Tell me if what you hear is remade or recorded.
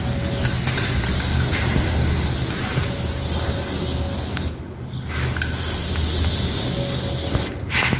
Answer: recorded